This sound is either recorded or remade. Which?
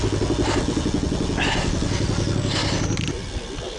recorded